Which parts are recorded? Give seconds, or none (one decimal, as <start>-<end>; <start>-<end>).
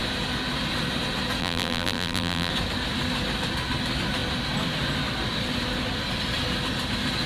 0.0-1.4; 2.5-7.3